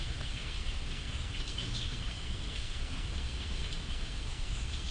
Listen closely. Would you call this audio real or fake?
fake